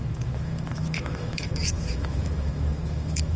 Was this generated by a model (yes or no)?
yes